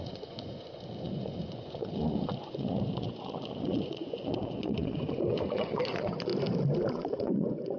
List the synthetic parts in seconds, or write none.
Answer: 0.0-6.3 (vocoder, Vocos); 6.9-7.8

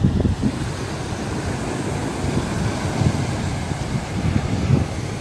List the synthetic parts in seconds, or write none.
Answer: none

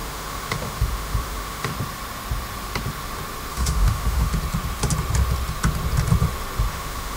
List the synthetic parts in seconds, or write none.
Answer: 0.0-1.7 (autoencoder, DAC-VAE); 3.5-4.3; 6.7-7.2